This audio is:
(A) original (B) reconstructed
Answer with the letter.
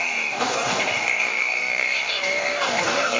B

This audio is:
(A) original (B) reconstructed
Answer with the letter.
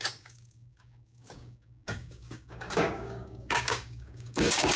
B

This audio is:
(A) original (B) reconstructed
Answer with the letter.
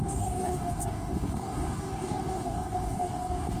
B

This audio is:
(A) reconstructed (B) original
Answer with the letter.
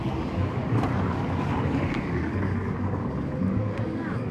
A